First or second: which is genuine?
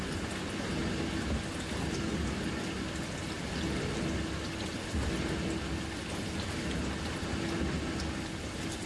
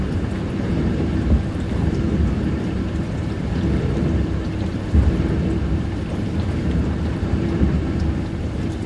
first